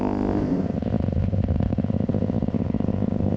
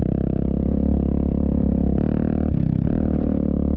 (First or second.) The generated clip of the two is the first